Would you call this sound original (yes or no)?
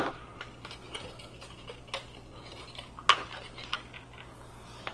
yes